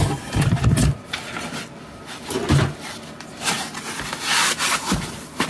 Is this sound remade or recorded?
recorded